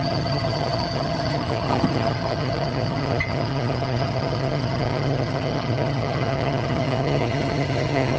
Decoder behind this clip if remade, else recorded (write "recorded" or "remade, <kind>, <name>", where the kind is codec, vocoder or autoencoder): remade, vocoder, HiFi-GAN